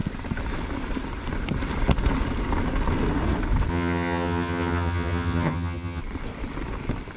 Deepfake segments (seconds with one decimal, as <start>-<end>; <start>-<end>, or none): 3.7-6.0